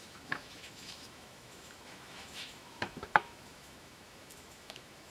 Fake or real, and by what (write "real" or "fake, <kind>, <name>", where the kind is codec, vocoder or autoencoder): fake, autoencoder, DAC-VAE